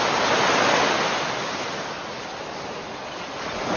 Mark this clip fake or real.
real